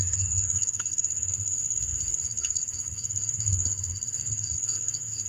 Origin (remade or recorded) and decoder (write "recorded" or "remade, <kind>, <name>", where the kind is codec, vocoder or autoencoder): remade, codec, SNAC